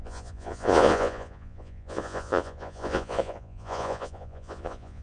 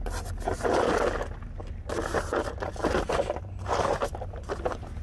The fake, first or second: first